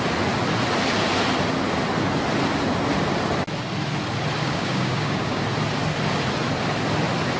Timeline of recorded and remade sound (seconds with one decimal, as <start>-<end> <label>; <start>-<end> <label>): 0.0-4.4 recorded; 4.4-5.4 remade; 5.4-7.4 recorded